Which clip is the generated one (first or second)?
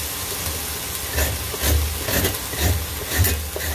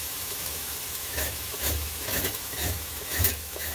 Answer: second